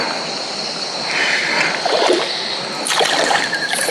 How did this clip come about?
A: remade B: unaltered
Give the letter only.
B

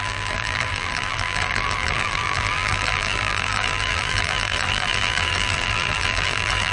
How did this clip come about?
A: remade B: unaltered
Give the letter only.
A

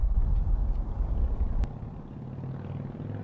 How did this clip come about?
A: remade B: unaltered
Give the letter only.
B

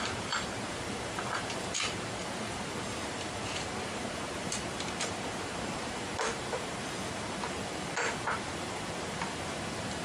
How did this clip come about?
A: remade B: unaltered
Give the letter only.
A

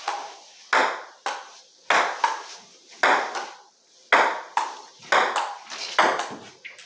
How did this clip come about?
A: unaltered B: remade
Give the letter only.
A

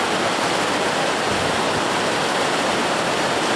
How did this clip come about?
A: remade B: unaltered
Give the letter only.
A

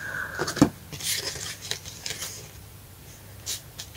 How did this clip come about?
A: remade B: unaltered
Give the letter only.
A